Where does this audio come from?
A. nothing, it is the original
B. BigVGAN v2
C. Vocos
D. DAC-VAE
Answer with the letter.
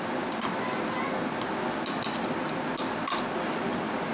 A